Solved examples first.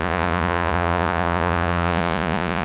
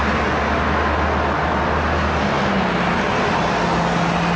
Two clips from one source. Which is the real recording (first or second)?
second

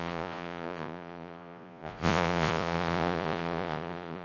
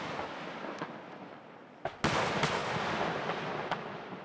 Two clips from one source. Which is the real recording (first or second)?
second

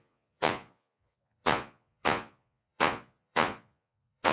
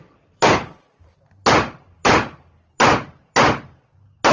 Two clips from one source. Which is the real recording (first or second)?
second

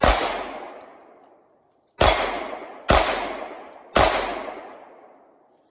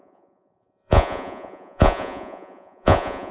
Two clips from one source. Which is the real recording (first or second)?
first